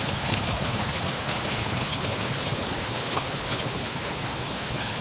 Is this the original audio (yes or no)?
no